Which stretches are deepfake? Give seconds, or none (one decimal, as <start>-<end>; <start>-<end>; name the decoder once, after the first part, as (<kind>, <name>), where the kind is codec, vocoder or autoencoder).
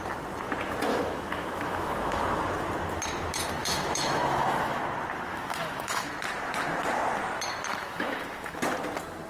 0.9-2.2 (autoencoder, DAC-VAE); 3.6-4.8; 5.3-6.1; 7.7-8.6